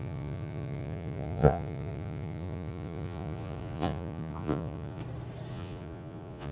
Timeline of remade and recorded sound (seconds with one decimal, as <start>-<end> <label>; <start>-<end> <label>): 0.0-5.0 remade; 5.0-5.5 recorded; 5.5-6.5 remade